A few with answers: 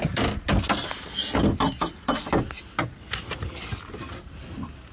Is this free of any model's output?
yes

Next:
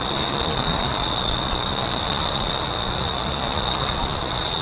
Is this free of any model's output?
no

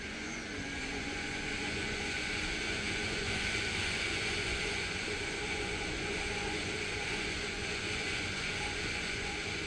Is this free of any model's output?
no